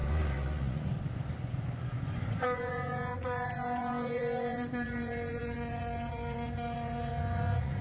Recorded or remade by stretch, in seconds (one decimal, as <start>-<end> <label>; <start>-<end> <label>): 0.0-7.8 remade